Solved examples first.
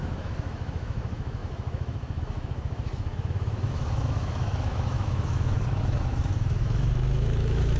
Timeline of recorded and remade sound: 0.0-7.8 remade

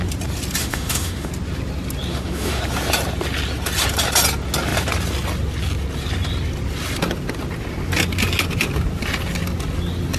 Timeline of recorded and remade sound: 0.0-0.6 recorded; 0.6-1.3 remade; 1.3-2.1 recorded; 2.1-2.6 remade; 2.6-10.2 recorded

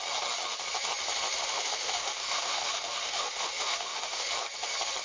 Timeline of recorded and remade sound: 0.0-1.3 recorded; 1.3-4.3 remade; 4.3-5.0 recorded

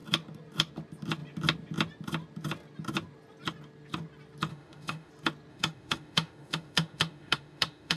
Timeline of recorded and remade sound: 0.0-4.5 recorded; 4.5-5.1 remade; 5.1-5.5 recorded; 5.5-8.0 remade

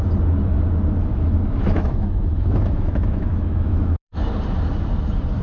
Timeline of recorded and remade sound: 0.0-1.1 recorded; 1.1-4.3 remade; 4.3-5.4 recorded

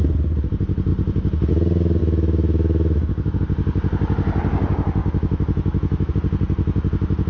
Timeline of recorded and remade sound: 0.0-2.0 recorded; 2.0-3.4 remade; 3.4-5.0 recorded; 5.0-6.1 remade; 6.1-7.3 recorded